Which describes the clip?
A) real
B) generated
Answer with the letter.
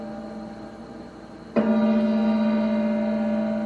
A